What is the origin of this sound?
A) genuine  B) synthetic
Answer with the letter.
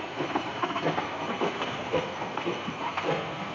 B